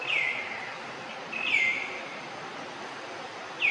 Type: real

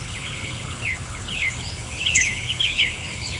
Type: fake